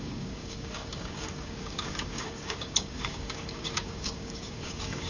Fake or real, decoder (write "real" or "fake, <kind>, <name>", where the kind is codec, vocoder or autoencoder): fake, codec, DAC